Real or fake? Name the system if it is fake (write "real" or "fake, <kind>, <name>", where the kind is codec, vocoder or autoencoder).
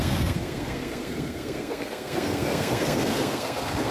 fake, codec, SNAC